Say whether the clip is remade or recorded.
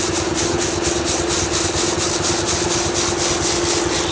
recorded